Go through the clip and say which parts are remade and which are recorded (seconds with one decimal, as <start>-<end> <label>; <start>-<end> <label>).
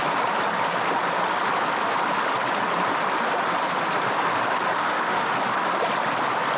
0.0-4.8 recorded; 4.8-5.3 remade; 5.3-6.6 recorded